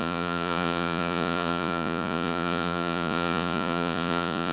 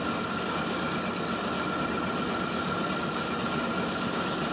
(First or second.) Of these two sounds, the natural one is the second